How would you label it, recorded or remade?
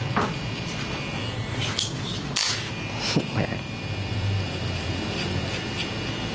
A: remade